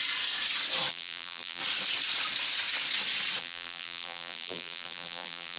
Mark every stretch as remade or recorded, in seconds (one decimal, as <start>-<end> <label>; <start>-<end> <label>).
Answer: 0.0-0.9 recorded; 0.9-1.6 remade; 1.6-3.4 recorded; 3.4-5.6 remade

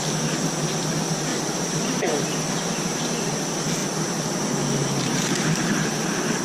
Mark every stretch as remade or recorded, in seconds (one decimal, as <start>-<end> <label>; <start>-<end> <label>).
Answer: 0.0-1.3 recorded; 1.3-3.0 remade; 3.0-3.8 recorded; 3.8-5.9 remade; 5.9-6.4 recorded

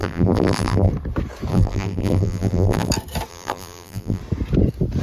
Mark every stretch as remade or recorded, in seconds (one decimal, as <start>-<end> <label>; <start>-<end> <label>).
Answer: 0.0-0.9 remade; 0.9-1.5 recorded; 1.5-2.9 remade; 2.9-3.3 recorded; 3.3-4.2 remade; 4.2-5.0 recorded

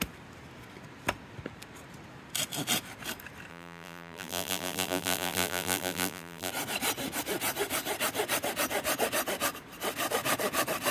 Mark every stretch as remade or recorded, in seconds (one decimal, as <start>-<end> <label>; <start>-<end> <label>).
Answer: 0.0-3.5 recorded; 3.5-6.5 remade; 6.5-10.9 recorded

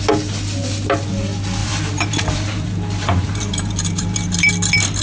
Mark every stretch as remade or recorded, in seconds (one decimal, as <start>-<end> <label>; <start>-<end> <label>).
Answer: 0.0-1.6 recorded; 1.6-4.5 remade; 4.5-5.0 recorded

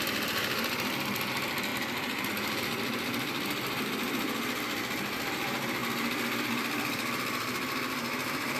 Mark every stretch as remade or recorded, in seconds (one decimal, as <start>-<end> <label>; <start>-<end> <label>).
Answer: 0.0-1.7 remade; 1.7-2.3 recorded; 2.3-5.8 remade; 5.8-6.4 recorded; 6.4-8.6 remade